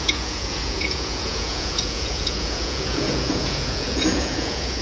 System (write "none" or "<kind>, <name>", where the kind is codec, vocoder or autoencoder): vocoder, Vocos